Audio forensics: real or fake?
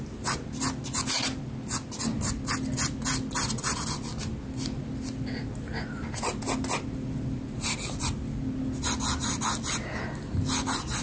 real